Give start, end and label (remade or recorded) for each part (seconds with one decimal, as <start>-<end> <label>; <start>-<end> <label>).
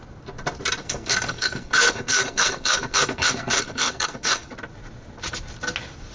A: 0.0-0.8 recorded; 0.8-4.5 remade; 4.5-6.1 recorded